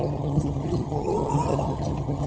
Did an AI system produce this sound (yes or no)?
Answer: yes